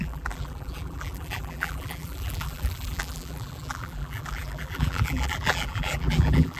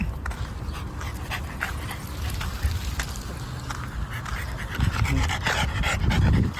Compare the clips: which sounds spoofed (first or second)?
first